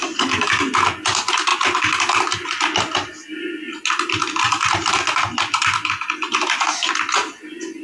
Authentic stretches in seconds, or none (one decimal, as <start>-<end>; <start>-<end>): 0.6-7.8